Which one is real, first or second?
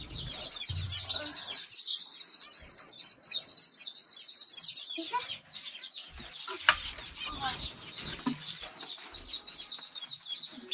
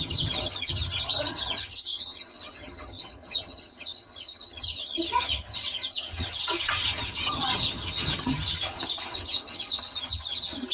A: first